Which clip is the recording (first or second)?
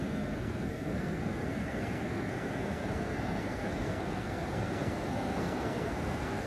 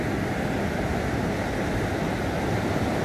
second